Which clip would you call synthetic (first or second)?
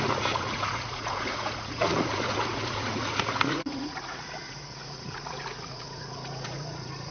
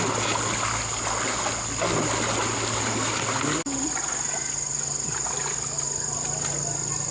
first